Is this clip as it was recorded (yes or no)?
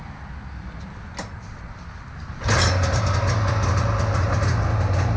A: yes